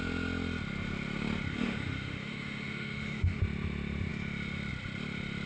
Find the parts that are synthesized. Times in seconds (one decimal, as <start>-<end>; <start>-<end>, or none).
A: 1.5-3.4